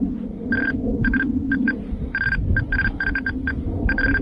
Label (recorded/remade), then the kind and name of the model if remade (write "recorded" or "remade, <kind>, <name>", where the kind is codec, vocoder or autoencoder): recorded